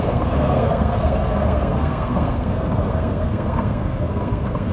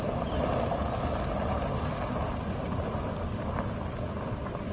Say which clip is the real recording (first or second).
second